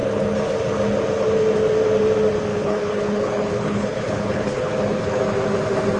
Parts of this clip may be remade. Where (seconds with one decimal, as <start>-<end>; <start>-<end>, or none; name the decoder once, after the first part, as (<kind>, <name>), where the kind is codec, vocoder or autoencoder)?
2.5-5.2 (codec, HILCodec)